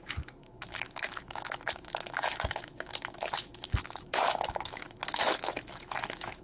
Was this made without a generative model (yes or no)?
no